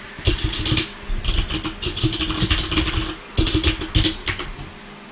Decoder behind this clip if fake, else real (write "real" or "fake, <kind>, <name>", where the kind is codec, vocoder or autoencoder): real